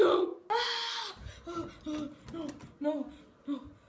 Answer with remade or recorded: recorded